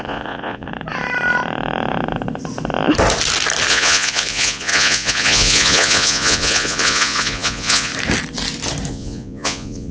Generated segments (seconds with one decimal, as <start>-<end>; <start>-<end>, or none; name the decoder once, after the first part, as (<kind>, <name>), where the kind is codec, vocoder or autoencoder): 0.0-0.7 (vocoder, Vocos); 3.7-7.9; 8.9-9.9